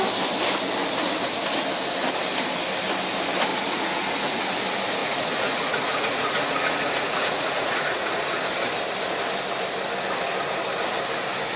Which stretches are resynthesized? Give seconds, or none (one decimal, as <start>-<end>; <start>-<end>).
3.5-4.4; 5.0-8.1